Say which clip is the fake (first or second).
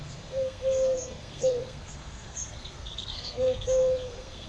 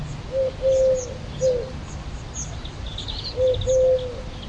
first